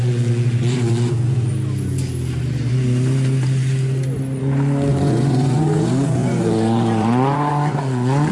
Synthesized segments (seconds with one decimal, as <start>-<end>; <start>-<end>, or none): 0.0-1.5; 4.9-8.3